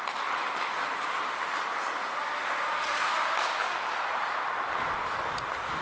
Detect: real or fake real